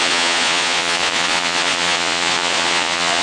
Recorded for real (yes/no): no